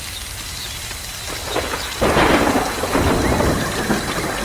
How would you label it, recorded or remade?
recorded